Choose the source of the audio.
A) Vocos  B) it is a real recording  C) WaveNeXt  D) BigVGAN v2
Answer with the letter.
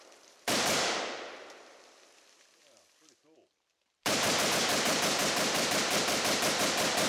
D